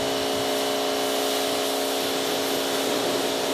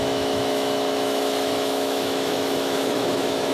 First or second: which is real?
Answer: first